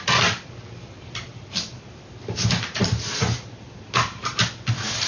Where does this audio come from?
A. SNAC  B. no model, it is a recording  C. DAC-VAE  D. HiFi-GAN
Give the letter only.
B